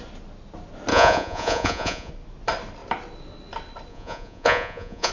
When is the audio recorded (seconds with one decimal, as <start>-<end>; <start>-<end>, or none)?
0.0-0.9; 2.1-3.9